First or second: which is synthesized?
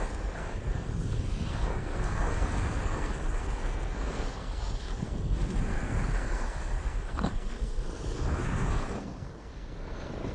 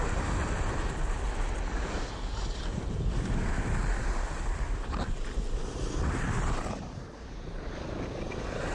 first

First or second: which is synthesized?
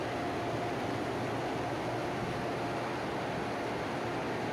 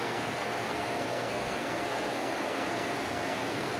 second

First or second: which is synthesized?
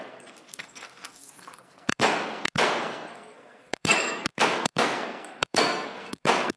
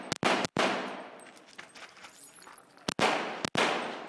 first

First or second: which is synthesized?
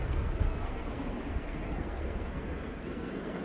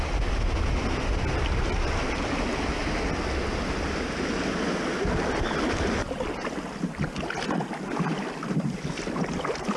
first